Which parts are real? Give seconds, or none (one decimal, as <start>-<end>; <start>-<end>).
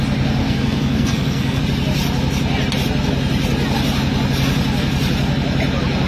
0.0-0.4; 1.6-6.1